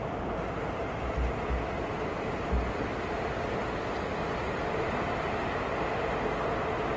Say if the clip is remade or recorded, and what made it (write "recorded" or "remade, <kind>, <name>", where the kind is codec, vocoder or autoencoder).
recorded